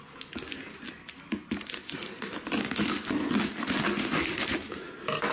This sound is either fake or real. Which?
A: real